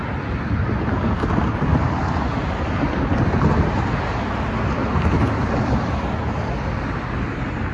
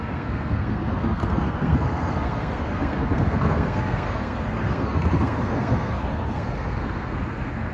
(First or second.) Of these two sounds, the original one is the first